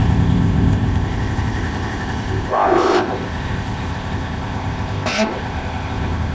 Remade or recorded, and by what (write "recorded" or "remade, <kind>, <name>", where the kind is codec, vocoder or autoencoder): remade, codec, ZipCodec